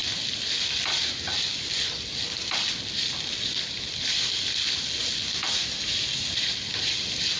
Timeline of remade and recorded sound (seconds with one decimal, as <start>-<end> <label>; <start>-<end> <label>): 0.0-7.4 recorded